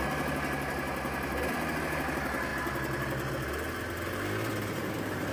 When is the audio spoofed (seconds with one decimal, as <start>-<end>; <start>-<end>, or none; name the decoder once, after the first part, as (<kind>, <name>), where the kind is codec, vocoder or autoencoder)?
4.5-5.3 (vocoder, BigVGAN v2)